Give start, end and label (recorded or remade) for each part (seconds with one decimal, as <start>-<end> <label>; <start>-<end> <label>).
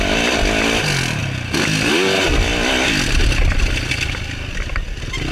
0.0-5.3 recorded